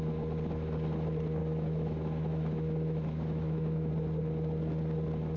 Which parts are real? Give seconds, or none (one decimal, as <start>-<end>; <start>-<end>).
0.0-1.4; 3.9-5.4